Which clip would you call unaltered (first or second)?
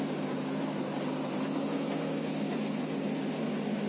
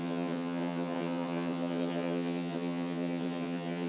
first